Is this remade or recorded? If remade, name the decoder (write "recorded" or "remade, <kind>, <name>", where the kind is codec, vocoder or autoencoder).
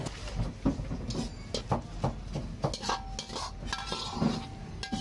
recorded